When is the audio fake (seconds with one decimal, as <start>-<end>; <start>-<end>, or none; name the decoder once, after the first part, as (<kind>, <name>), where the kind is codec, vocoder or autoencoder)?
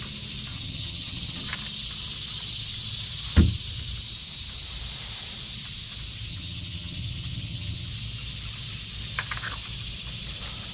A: 0.5-1.4 (vocoder, HiFi-GAN); 6.3-7.9